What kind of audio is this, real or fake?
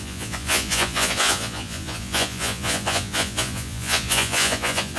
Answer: fake